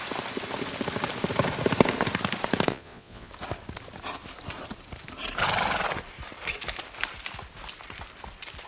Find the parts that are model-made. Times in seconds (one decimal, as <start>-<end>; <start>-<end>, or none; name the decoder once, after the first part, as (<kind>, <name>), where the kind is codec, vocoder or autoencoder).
2.7-3.3 (vocoder, Vocos)